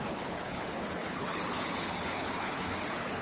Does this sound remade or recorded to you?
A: remade